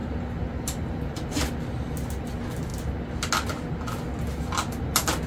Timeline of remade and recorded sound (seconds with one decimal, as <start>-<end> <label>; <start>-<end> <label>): 0.0-5.3 recorded